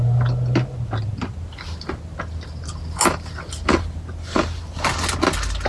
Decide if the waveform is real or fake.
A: real